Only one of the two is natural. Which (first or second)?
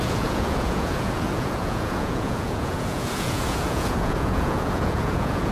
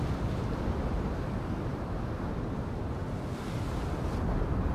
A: second